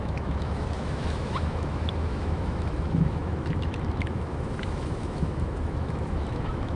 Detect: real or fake fake